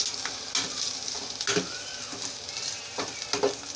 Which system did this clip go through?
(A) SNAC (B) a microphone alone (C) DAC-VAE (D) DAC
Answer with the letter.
B